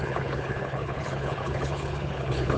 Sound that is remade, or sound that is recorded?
remade